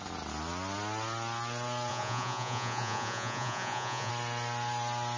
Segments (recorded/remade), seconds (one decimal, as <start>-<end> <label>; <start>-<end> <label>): 0.0-1.9 recorded; 1.9-4.1 remade; 4.1-5.2 recorded